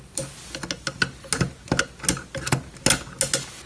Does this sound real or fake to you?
real